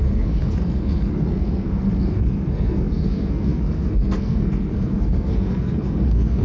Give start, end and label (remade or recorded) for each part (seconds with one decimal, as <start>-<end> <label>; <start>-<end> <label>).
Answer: 0.0-6.4 remade